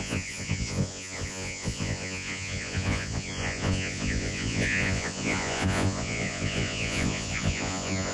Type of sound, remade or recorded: remade